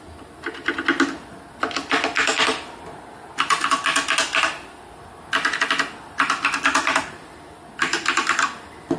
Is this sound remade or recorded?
recorded